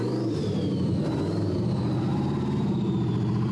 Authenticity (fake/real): fake